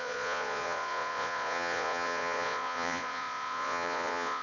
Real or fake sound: fake